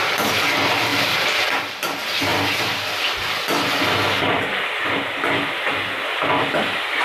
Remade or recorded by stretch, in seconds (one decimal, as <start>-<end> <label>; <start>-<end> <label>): 0.0-7.0 recorded